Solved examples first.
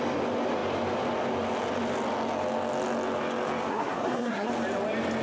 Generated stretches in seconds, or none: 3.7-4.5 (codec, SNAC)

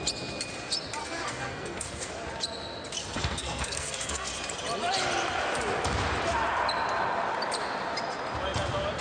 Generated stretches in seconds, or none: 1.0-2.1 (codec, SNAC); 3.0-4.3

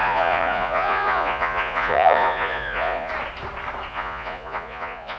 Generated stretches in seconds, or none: 0.0-3.1 (vocoder, Vocos); 3.9-5.2

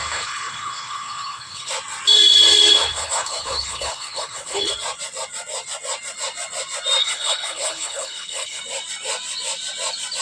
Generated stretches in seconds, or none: 0.0-1.7 (codec, HILCodec); 2.9-4.7; 7.0-8.6

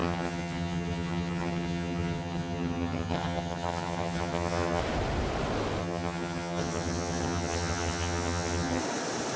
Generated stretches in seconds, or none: 0.0-4.8 (vocoder, HiFi-GAN); 5.8-8.8

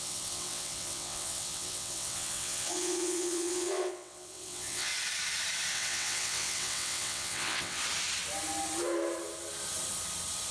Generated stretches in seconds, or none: 0.0-4.9 (vocoder, WaveNeXt); 5.7-7.8